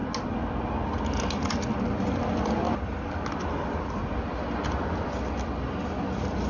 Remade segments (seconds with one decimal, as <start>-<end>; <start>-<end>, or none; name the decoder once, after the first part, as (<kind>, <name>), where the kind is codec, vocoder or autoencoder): none